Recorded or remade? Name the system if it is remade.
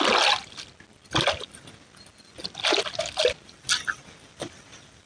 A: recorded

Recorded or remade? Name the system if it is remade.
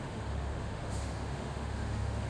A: remade, autoencoder, DAC-VAE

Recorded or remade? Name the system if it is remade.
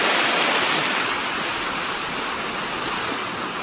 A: recorded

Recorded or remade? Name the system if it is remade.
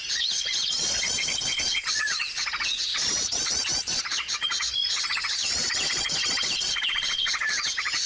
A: remade, vocoder, Vocos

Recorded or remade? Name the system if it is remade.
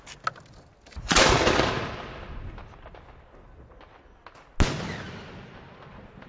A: recorded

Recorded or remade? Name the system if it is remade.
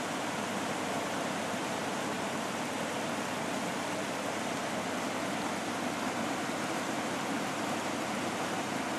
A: remade, vocoder, BigVGAN v2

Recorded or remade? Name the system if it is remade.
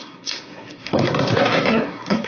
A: remade, codec, SNAC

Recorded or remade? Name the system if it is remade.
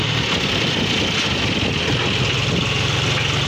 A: recorded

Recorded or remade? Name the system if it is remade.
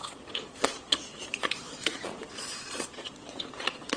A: remade, vocoder, Vocos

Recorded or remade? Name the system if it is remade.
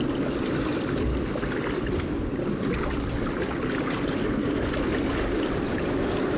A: recorded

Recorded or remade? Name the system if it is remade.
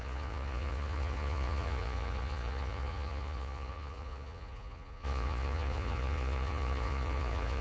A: remade, vocoder, Vocos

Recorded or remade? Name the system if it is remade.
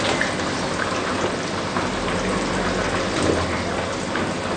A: recorded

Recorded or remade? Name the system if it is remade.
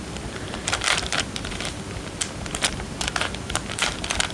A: remade, vocoder, BigVGAN v2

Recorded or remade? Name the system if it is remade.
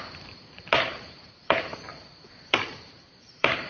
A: remade, vocoder, BigVGAN v2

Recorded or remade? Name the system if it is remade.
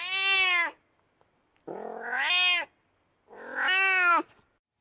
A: recorded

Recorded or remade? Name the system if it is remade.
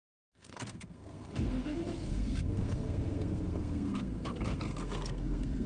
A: remade, codec, SNAC